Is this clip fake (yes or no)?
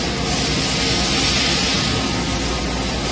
no